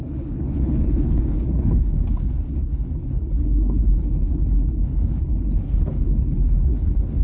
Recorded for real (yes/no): no